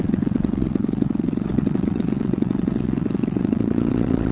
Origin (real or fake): fake